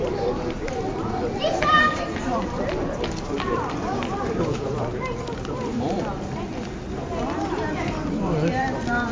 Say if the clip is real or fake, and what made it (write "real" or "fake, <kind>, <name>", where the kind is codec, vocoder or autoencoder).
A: fake, vocoder, BigVGAN v2